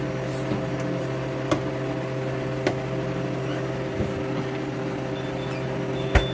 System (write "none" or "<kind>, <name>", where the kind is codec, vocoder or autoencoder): none